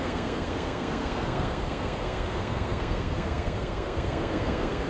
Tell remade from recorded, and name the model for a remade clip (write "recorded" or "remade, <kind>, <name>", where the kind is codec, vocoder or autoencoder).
remade, codec, SNAC